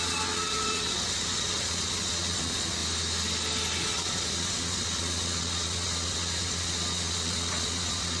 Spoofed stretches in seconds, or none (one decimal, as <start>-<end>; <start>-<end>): 0.0-2.8; 3.8-8.2